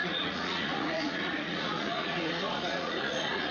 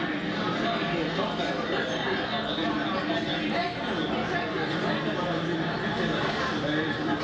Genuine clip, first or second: second